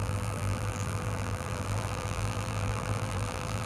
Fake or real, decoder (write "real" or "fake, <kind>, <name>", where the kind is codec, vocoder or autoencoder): fake, vocoder, BigVGAN v2